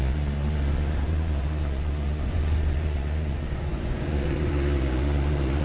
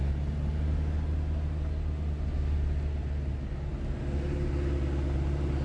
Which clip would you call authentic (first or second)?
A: second